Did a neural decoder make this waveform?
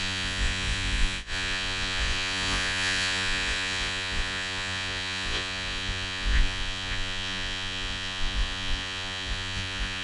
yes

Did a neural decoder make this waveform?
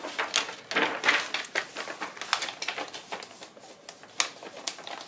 no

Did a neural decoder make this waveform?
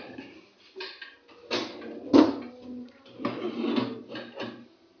no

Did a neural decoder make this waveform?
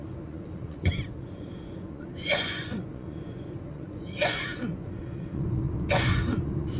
yes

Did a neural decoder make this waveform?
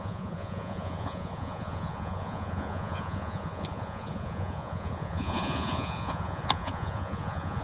yes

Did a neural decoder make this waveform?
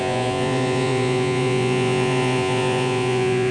yes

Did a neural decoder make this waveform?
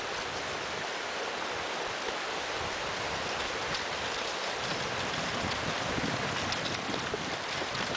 no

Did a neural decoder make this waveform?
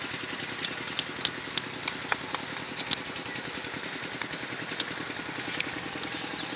no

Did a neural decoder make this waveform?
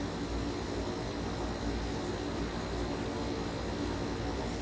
no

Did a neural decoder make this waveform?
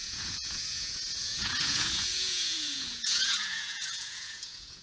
yes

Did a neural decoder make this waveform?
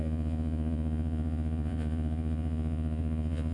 yes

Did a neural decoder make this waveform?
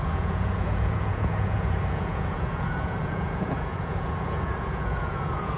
yes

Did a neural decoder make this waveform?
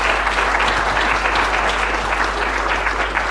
no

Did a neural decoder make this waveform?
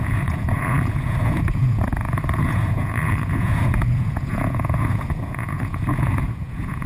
yes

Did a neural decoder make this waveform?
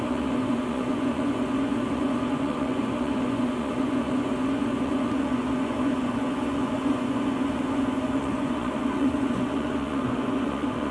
yes